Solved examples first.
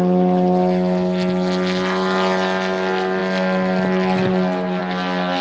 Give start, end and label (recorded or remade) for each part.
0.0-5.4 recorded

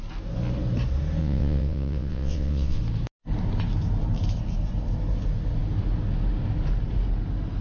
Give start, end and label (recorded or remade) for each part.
0.0-1.2 recorded; 1.2-2.8 remade; 2.8-7.6 recorded

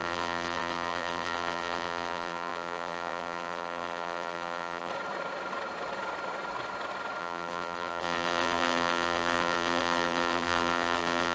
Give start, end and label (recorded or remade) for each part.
0.0-4.9 remade; 4.9-7.2 recorded; 7.2-11.3 remade

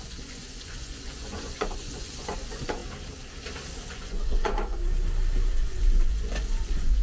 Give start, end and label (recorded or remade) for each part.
0.0-2.8 remade; 2.8-3.9 recorded; 3.9-4.8 remade; 4.8-5.5 recorded; 5.5-7.0 remade

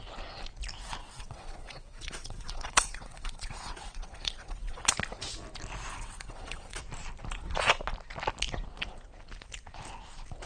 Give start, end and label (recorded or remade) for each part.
0.0-1.0 recorded; 1.0-4.9 remade; 4.9-5.9 recorded; 5.9-6.8 remade; 6.8-10.5 recorded

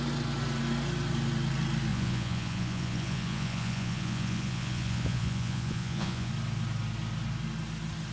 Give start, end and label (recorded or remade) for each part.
0.0-1.9 recorded; 1.9-6.3 remade; 6.3-8.1 recorded

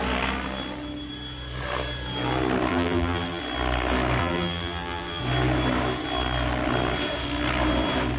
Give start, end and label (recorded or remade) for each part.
0.0-2.7 recorded; 2.7-3.4 remade; 3.4-4.2 recorded; 4.2-5.2 remade; 5.2-8.2 recorded